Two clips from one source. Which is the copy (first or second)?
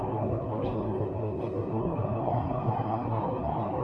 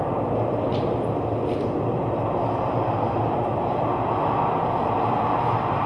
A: first